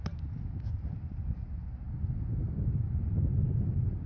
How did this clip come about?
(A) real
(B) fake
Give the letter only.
A